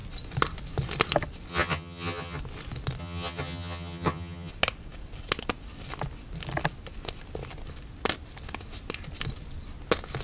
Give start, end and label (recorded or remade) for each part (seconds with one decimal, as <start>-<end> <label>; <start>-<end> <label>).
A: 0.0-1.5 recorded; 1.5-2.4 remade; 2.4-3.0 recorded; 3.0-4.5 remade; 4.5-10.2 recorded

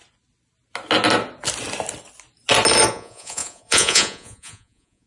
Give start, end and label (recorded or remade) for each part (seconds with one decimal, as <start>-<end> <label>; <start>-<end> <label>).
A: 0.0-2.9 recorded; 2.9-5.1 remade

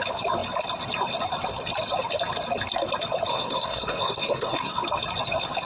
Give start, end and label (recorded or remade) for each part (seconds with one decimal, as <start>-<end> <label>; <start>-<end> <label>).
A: 0.0-3.3 recorded; 3.3-4.8 remade; 4.8-5.7 recorded

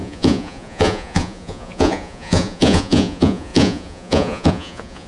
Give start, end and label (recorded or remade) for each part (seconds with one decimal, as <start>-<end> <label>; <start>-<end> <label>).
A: 0.0-5.1 remade

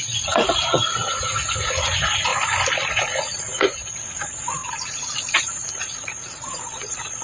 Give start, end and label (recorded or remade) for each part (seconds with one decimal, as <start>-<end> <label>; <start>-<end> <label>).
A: 0.0-2.3 remade; 2.3-2.9 recorded; 2.9-7.2 remade

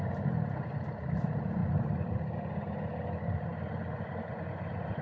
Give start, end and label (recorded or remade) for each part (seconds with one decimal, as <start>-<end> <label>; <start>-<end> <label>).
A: 0.0-5.0 recorded

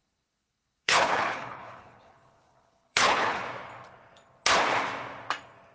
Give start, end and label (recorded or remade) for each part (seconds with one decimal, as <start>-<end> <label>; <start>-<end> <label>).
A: 0.0-3.4 remade; 3.4-5.7 recorded

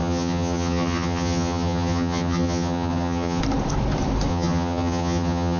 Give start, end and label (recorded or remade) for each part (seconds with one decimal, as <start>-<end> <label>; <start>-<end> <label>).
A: 0.0-3.4 remade; 3.4-4.3 recorded; 4.3-5.6 remade